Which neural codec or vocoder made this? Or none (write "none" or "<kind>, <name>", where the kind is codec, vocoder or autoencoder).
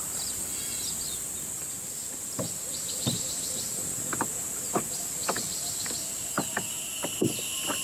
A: vocoder, BigVGAN v2